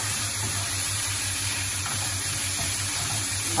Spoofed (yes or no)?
yes